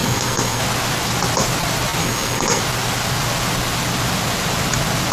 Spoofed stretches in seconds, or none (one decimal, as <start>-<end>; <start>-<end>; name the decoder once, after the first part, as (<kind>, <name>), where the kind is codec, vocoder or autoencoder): 0.0-0.6 (codec, SNAC); 2.0-2.6